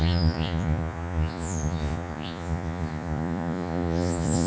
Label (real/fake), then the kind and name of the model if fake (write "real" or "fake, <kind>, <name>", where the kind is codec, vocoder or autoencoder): fake, vocoder, Vocos